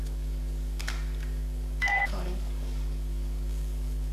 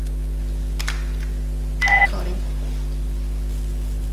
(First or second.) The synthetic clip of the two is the first